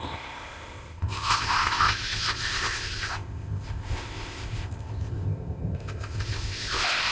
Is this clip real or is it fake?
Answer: fake